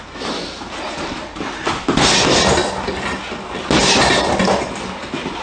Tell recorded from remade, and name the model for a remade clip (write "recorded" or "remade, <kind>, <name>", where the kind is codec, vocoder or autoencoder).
recorded